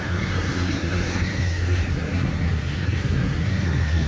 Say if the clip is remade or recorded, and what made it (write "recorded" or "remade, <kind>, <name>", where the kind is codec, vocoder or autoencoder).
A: remade, codec, SNAC